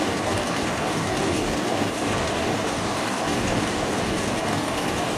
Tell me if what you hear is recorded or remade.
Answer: remade